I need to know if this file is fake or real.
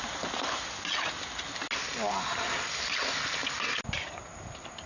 real